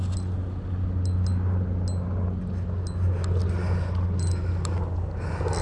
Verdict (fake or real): real